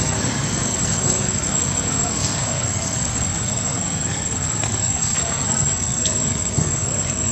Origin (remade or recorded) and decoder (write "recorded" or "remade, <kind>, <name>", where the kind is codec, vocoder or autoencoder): remade, codec, SNAC